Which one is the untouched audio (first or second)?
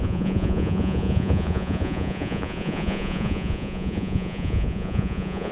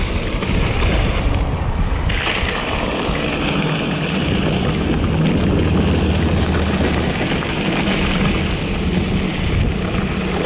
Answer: second